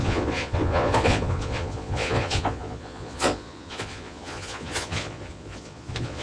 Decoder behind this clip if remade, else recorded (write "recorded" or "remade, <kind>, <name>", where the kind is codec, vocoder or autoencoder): remade, vocoder, Vocos